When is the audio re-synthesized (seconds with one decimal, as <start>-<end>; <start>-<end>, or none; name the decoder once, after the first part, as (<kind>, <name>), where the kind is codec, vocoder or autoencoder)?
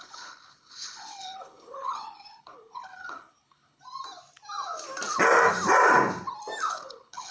0.0-3.8 (codec, HILCodec); 6.7-7.3